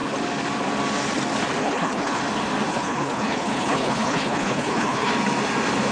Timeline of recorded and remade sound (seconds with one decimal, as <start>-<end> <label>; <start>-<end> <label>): 0.0-1.6 recorded; 1.6-2.2 remade; 2.2-2.7 recorded; 2.7-5.1 remade; 5.1-5.9 recorded

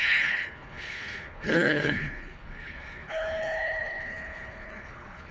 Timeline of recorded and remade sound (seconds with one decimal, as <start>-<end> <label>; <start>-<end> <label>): 0.0-5.3 remade